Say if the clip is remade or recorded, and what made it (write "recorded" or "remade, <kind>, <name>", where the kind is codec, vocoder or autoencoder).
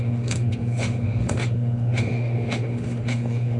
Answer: remade, autoencoder, DAC-VAE